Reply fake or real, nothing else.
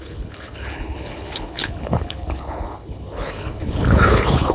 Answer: fake